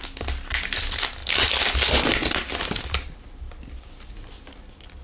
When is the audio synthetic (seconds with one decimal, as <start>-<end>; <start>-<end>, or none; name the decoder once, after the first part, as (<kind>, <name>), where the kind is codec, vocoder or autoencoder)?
none